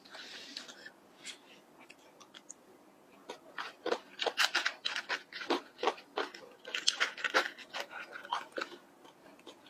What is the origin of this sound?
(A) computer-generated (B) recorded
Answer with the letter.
B